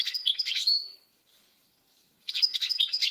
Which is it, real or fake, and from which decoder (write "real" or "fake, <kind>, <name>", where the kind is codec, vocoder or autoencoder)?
fake, codec, SNAC